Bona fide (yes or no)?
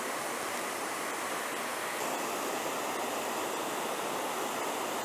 yes